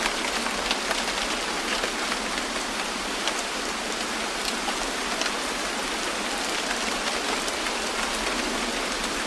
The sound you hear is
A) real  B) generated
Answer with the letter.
A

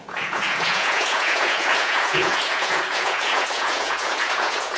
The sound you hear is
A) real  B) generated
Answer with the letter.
B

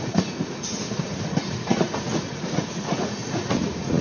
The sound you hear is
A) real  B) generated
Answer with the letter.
B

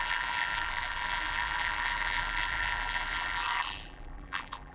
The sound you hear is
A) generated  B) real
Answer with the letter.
A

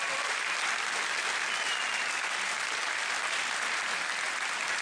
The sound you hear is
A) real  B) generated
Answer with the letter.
A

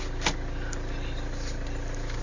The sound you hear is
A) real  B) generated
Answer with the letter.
A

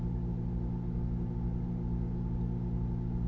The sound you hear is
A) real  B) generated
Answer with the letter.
A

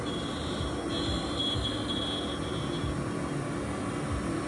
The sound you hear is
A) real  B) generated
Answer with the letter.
A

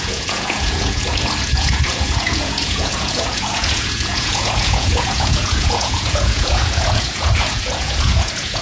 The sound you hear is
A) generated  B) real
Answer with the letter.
A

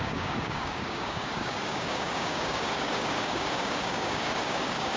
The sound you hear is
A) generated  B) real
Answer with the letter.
A